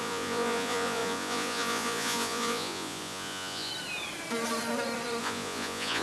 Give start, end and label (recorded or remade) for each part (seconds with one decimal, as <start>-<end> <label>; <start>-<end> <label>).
0.0-3.7 remade; 3.7-5.2 recorded; 5.2-6.0 remade